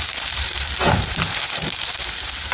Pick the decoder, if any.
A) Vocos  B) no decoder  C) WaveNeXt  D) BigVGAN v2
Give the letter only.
D